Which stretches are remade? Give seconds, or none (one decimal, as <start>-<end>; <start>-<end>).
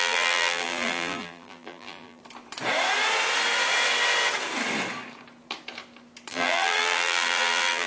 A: 0.0-2.2; 6.3-7.9